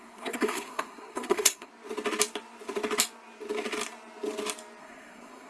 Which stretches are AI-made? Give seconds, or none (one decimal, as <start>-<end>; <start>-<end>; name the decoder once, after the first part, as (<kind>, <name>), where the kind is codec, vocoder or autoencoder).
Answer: 0.0-1.7 (codec, SNAC); 4.8-5.5